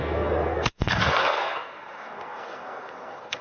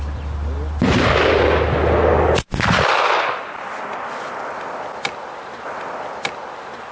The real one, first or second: second